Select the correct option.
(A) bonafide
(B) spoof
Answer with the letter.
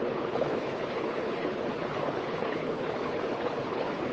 B